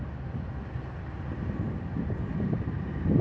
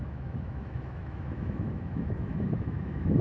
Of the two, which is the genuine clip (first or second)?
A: first